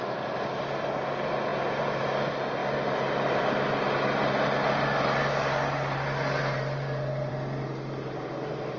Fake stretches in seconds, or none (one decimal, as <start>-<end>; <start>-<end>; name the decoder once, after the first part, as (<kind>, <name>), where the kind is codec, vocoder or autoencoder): none